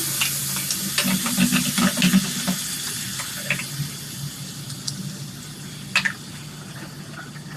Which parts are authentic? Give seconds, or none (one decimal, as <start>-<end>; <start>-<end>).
0.0-7.6